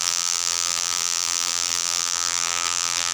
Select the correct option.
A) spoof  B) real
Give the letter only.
A